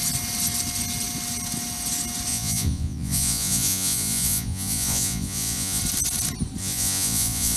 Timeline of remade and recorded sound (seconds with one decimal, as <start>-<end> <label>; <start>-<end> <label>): 0.0-2.3 recorded; 2.3-5.8 remade; 5.8-6.6 recorded; 6.6-7.6 remade